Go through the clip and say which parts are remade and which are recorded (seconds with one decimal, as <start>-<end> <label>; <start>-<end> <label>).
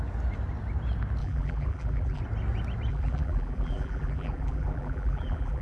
0.0-1.2 recorded; 1.2-2.2 remade; 2.2-2.9 recorded; 2.9-5.6 remade